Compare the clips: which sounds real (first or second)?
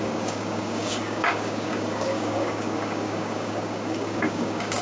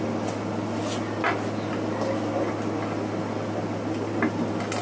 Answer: second